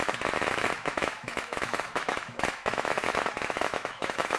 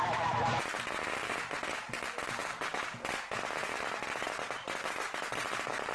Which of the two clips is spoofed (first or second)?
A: first